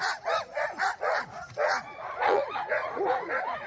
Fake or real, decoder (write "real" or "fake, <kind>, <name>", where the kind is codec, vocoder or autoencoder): fake, vocoder, Vocos